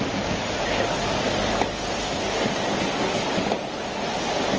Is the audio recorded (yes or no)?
yes